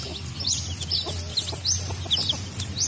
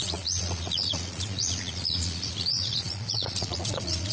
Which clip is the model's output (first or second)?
second